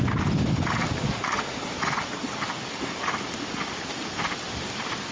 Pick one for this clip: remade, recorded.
recorded